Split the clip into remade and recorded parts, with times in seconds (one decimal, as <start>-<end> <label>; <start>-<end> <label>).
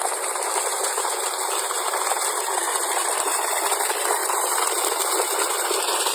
0.0-6.1 remade